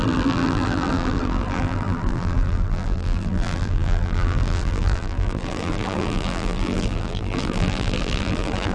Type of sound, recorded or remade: remade